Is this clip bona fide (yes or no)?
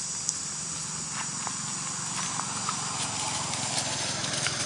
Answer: yes